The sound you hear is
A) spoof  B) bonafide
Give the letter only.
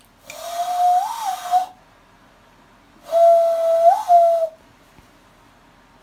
B